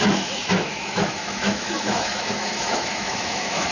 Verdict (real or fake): fake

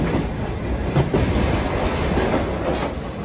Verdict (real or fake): real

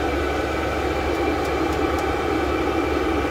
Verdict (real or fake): real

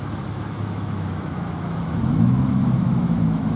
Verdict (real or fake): fake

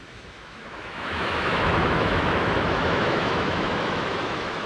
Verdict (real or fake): fake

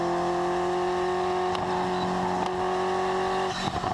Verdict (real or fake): real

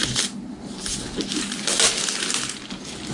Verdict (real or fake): real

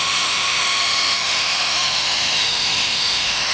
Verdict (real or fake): fake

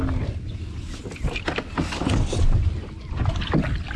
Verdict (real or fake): real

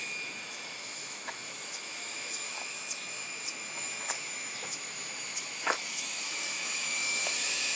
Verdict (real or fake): fake